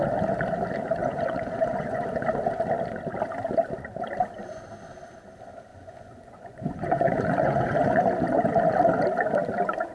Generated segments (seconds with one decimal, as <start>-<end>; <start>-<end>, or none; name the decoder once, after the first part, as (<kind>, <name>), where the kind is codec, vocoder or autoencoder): 1.0-2.2 (vocoder, Vocos); 5.7-8.0